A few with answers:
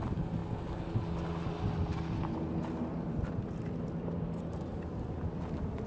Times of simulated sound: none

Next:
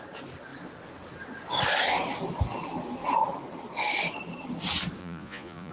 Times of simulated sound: 5.0-5.7 (vocoder, Vocos)

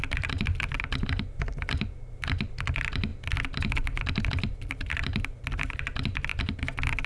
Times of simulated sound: none

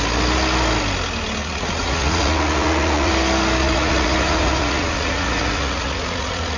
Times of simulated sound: 1.4-3.1 (vocoder, Vocos); 3.6-6.6

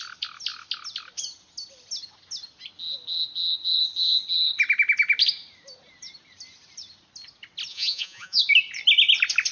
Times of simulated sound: 7.7-8.4 (vocoder, Vocos)

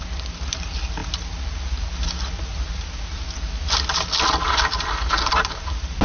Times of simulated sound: none

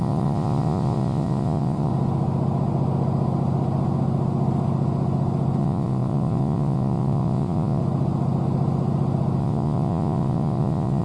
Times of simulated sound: 0.0-1.9 (vocoder, Vocos); 5.6-7.8; 9.4-11.0

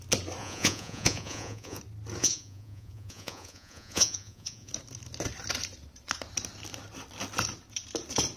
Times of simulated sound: 0.4-1.8 (vocoder, Vocos); 2.2-4.7